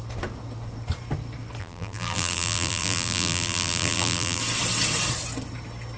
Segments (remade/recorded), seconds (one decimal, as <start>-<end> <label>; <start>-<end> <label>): 0.0-1.6 recorded; 1.6-4.4 remade; 4.4-6.0 recorded